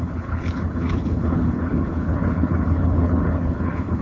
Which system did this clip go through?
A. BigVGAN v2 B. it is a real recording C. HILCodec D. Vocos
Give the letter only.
C